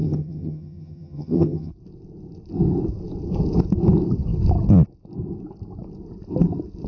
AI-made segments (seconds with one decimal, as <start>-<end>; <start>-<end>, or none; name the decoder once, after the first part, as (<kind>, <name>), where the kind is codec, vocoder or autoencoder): 0.0-1.7 (vocoder, HiFi-GAN)